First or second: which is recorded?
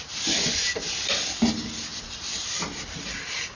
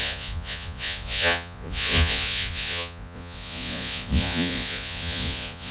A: first